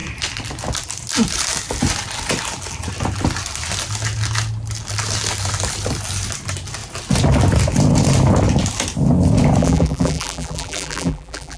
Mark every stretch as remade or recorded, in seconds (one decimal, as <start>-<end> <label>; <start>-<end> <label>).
0.0-9.6 recorded; 9.6-11.6 remade